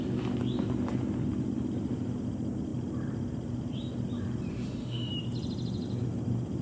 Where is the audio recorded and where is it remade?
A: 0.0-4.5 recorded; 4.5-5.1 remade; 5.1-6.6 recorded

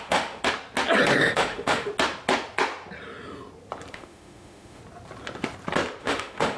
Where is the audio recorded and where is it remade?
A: 0.0-0.4 remade; 0.4-1.2 recorded; 1.2-1.9 remade; 1.9-3.9 recorded; 3.9-4.8 remade; 4.8-6.0 recorded; 6.0-6.6 remade